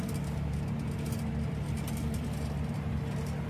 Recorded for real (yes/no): yes